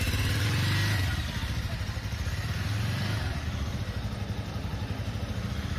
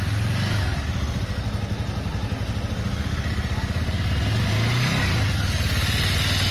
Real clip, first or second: second